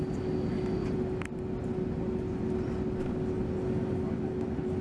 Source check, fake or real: real